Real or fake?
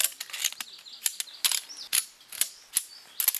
real